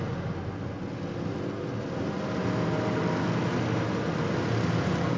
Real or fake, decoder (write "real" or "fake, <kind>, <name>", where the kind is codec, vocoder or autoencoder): real